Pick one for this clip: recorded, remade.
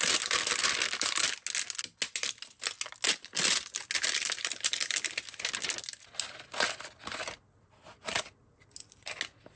recorded